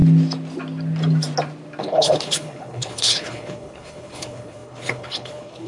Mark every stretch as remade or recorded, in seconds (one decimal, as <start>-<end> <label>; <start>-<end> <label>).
0.0-1.8 recorded; 1.8-5.7 remade